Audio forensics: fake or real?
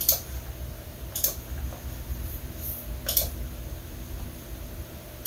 fake